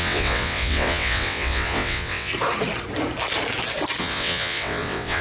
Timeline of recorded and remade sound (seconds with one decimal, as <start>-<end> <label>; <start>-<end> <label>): 0.0-2.3 remade; 2.3-4.0 recorded; 4.0-5.2 remade